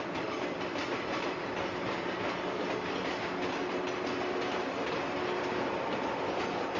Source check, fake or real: real